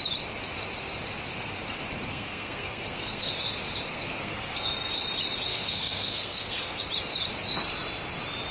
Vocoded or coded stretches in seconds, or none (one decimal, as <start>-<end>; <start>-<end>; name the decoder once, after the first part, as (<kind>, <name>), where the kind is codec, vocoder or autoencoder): 2.1-3.3 (codec, SNAC); 3.9-4.7; 5.5-6.8